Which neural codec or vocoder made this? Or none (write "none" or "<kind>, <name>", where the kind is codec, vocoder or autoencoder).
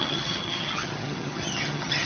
vocoder, HiFi-GAN